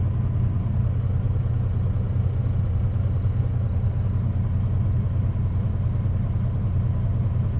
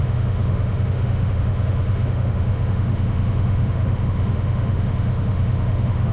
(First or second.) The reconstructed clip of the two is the second